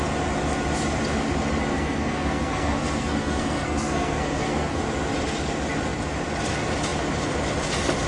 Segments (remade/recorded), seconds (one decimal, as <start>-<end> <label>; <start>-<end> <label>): 0.0-1.7 recorded; 1.7-4.8 remade; 4.8-8.1 recorded